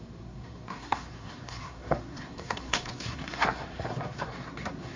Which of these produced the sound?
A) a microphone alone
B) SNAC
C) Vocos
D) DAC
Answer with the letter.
B